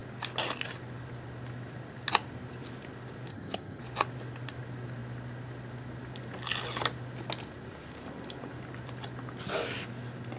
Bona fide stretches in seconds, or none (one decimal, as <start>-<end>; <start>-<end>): 0.0-3.3; 3.8-10.4

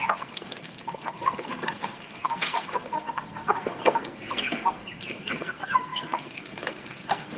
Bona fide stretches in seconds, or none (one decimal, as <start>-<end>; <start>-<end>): none

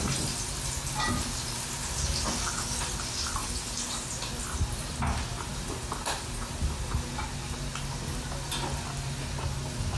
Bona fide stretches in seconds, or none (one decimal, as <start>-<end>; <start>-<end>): 0.0-10.0